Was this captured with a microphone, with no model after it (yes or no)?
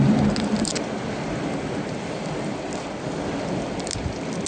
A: yes